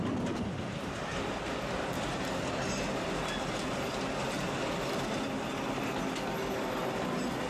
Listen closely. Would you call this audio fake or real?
real